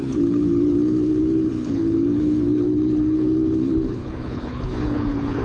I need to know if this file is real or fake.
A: fake